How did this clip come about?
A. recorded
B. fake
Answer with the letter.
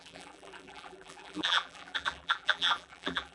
B